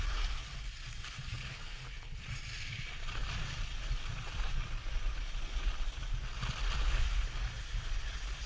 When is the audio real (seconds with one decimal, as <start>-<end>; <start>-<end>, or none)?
0.0-1.4; 2.2-8.5